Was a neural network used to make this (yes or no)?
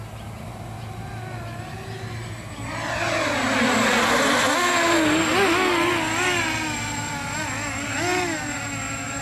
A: no